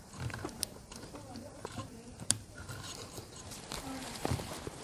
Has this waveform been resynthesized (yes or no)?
yes